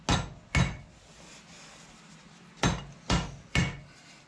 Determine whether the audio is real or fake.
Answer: real